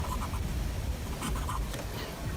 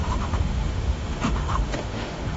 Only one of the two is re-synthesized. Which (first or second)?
second